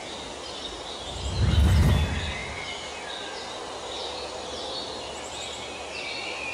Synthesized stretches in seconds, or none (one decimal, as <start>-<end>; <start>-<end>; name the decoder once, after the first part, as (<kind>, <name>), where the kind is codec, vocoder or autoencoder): none